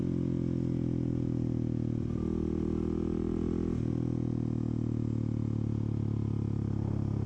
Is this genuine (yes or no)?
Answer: yes